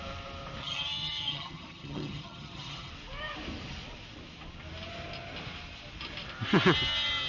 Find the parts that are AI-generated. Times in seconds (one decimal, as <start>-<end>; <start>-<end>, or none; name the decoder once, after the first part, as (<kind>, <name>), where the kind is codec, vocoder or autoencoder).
0.6-2.9 (vocoder, HiFi-GAN)